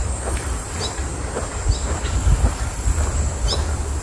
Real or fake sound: fake